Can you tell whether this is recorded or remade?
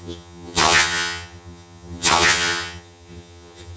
remade